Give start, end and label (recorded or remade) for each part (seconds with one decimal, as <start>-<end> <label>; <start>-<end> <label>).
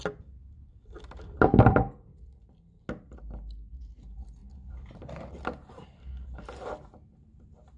0.0-7.8 recorded